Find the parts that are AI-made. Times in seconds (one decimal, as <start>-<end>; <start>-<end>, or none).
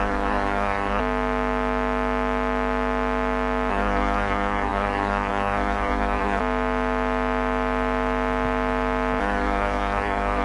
0.0-1.0; 3.7-6.4; 9.2-10.4